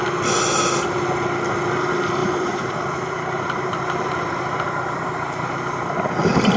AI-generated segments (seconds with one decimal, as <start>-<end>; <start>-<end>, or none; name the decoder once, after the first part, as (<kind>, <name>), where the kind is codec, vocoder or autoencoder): 2.2-5.8 (vocoder, BigVGAN v2)